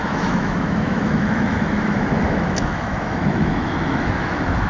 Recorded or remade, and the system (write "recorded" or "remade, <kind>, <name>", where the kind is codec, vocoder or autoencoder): remade, autoencoder, DAC-VAE